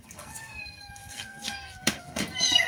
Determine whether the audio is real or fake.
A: fake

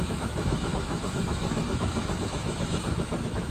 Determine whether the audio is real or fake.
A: fake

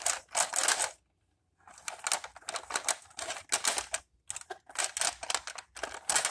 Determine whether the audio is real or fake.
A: real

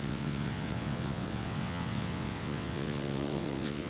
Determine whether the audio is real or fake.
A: fake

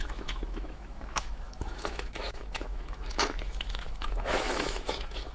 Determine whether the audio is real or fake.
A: fake